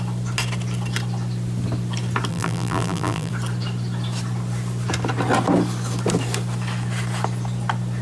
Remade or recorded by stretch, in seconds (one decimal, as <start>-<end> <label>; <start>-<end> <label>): 0.0-2.3 recorded; 2.3-3.3 remade; 3.3-8.0 recorded